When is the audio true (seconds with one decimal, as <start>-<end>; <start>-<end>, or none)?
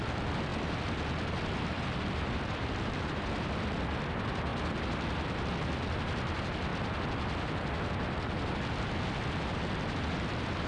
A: 0.5-1.7; 4.5-5.9; 6.7-9.8